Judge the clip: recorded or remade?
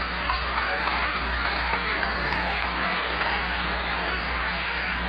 remade